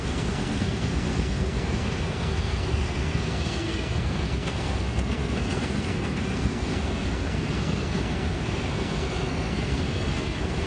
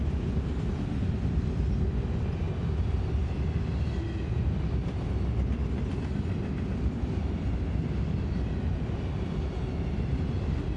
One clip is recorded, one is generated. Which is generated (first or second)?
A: first